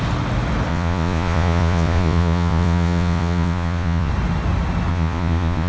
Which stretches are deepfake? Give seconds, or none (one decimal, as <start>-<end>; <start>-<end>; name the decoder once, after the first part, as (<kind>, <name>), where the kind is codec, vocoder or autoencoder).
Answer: 0.7-4.1 (vocoder, Vocos); 4.9-5.7